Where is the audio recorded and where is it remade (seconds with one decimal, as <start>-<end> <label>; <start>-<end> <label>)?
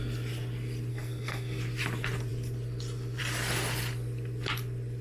0.0-0.9 recorded; 0.9-1.6 remade; 1.6-5.0 recorded